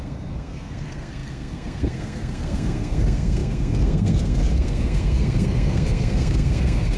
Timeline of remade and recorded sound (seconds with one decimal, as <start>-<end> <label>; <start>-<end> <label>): 0.0-7.0 remade